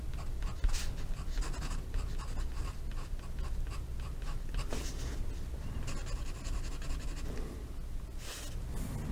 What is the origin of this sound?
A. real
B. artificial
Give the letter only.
A